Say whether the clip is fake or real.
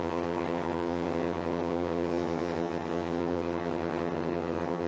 fake